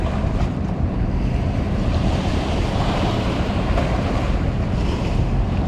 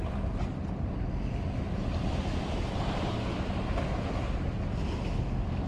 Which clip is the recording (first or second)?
second